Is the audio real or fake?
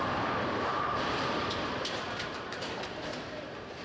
fake